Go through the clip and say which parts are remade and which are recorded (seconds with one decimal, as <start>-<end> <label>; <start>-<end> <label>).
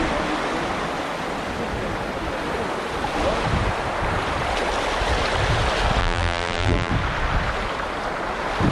0.0-6.0 recorded; 6.0-6.9 remade; 6.9-8.7 recorded